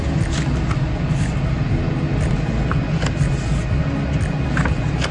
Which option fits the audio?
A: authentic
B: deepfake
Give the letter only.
A